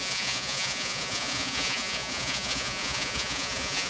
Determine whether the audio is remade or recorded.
remade